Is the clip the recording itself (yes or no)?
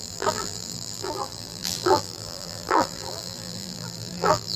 no